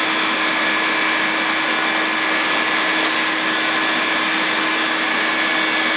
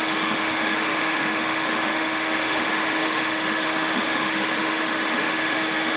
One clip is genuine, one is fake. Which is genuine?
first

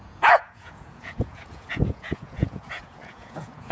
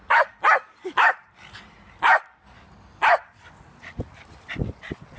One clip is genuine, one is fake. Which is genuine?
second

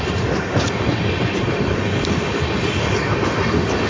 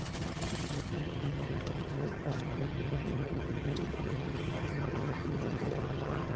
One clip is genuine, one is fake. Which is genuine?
first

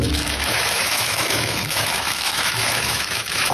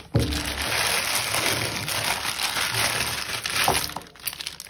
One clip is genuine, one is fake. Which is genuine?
second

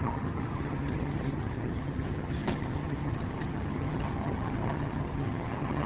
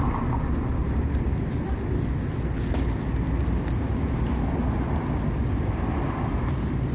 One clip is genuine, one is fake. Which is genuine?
second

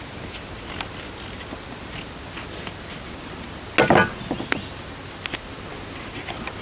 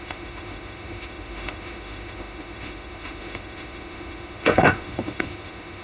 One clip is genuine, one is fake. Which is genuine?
first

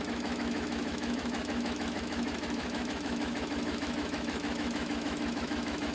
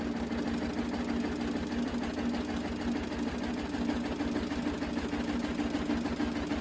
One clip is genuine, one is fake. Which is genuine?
second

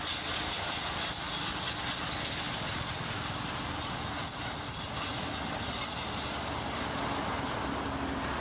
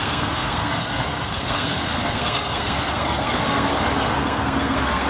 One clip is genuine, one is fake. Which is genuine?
first